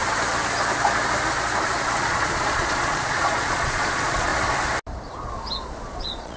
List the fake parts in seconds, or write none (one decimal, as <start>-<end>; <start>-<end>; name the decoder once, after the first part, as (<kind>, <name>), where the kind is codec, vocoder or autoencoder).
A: 2.0-4.3 (vocoder, Vocos); 6.0-6.4